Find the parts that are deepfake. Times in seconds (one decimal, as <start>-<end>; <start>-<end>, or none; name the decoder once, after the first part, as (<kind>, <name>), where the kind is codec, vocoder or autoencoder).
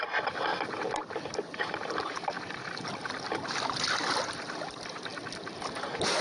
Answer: none